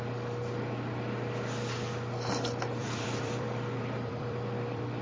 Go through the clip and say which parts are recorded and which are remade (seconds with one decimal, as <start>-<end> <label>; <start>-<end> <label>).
0.0-2.8 recorded; 2.8-5.0 remade